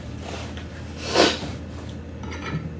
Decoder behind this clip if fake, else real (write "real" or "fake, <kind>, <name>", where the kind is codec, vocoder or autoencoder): real